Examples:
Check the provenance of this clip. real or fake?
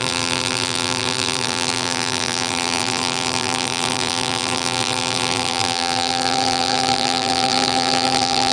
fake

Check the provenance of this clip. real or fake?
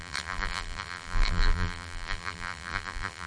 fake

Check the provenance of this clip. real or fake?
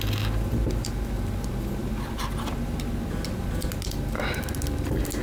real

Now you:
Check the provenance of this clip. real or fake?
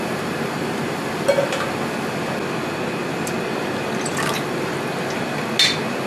real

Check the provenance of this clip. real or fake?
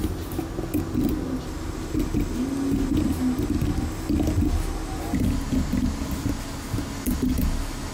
real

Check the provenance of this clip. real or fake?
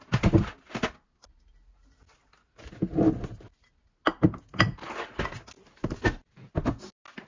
real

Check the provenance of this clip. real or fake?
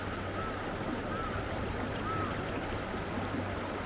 real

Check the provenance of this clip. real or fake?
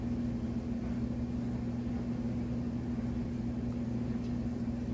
real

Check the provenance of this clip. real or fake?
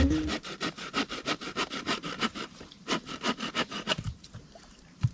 fake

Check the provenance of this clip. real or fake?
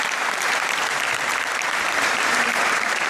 fake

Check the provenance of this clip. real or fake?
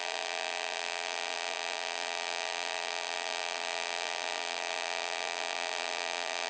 fake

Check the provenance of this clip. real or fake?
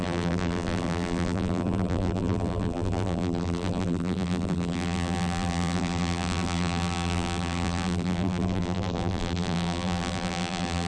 fake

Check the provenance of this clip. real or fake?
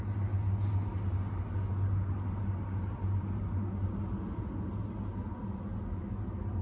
real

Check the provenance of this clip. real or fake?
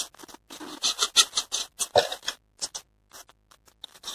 real